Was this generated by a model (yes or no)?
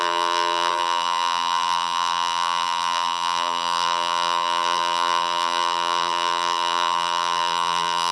yes